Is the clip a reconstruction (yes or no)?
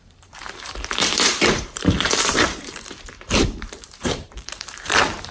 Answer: yes